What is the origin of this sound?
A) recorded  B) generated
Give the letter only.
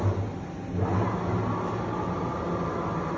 A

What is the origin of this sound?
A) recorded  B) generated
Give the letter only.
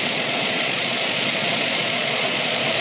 B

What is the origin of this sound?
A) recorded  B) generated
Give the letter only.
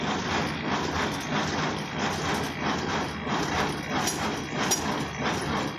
A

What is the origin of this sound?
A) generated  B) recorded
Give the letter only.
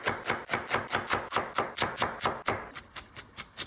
B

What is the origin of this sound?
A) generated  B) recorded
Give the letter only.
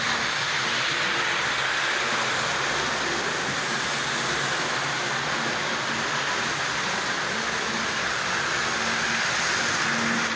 B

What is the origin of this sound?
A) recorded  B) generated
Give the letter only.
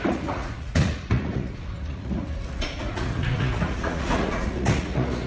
B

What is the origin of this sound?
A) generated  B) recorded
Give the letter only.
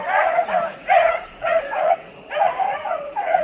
A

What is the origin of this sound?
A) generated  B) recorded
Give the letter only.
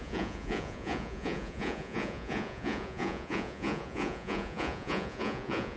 A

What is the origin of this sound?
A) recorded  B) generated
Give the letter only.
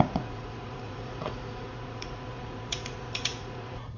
B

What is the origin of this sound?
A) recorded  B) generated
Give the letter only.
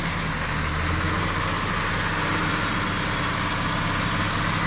A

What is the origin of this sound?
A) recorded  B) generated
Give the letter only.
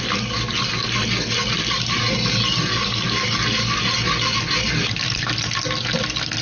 A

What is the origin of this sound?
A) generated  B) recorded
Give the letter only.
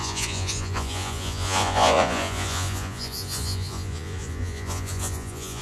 A